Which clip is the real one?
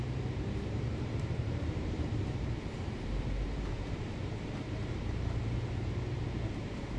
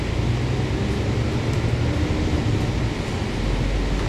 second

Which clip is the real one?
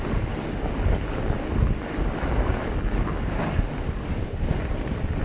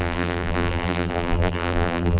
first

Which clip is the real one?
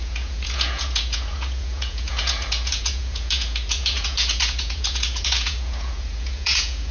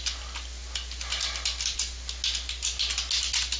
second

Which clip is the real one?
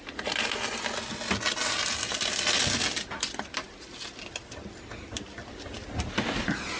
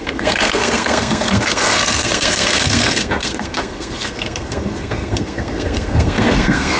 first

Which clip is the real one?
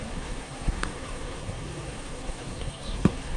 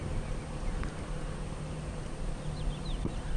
second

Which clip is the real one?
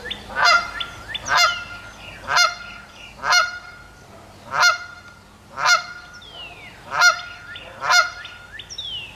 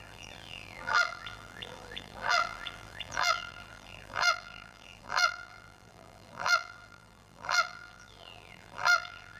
first